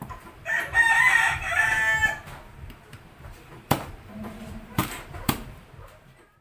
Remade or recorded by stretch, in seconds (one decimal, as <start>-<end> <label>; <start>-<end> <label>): 0.0-6.4 remade